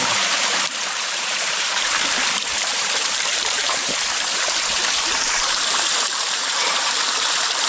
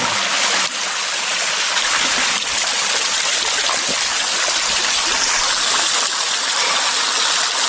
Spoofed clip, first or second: first